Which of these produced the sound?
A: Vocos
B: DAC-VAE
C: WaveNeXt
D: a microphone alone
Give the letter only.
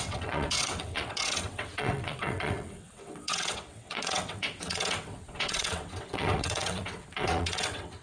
C